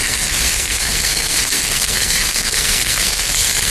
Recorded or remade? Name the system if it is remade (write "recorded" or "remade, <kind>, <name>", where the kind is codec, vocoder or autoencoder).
remade, codec, SNAC